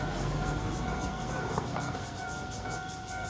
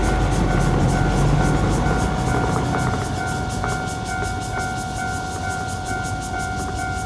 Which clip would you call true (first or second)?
second